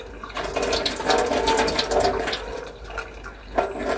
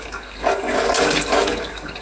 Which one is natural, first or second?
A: first